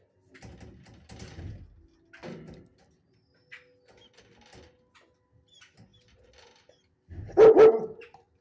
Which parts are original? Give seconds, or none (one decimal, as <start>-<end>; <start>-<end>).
0.0-8.4